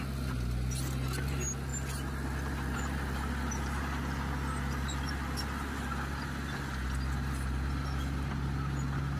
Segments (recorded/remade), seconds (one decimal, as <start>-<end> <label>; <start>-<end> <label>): 0.0-9.2 recorded